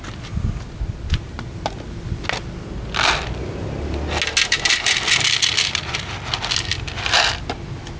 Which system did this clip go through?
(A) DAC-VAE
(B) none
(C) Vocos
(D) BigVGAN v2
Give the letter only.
B